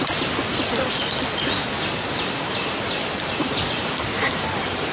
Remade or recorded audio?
recorded